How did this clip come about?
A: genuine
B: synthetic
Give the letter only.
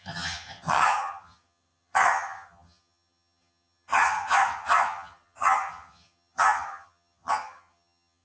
B